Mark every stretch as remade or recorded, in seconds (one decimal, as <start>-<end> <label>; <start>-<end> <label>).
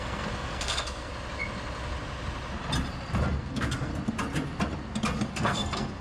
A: 0.0-1.1 remade; 1.1-3.4 recorded; 3.4-3.9 remade; 3.9-5.3 recorded; 5.3-6.0 remade